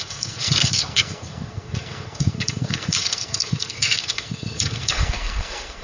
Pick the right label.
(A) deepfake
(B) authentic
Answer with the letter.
A